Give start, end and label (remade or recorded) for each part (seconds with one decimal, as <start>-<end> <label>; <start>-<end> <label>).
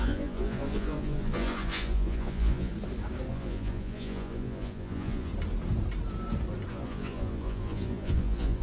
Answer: 0.0-2.7 remade; 2.7-3.3 recorded; 3.3-5.3 remade; 5.3-6.7 recorded; 6.7-8.6 remade